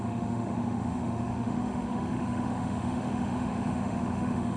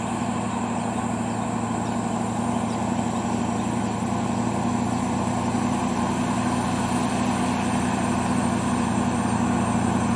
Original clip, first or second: second